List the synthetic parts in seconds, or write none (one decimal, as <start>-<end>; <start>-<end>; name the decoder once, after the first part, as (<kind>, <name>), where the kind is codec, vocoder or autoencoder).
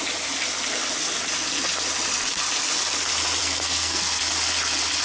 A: 3.4-4.2 (codec, SNAC)